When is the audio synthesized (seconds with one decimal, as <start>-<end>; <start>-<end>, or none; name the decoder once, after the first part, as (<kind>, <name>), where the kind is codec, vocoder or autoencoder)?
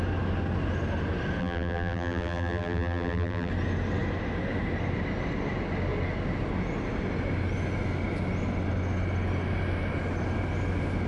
1.4-3.5 (vocoder, BigVGAN v2)